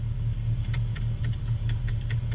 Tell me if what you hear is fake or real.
fake